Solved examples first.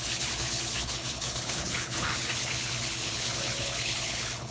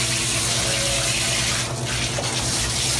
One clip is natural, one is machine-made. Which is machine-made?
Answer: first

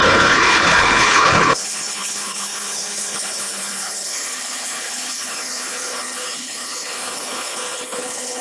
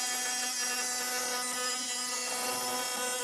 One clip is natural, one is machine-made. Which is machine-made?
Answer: first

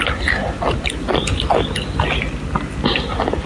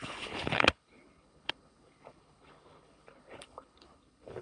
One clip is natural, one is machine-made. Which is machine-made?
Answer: second